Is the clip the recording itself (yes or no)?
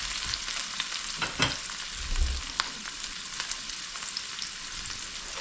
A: yes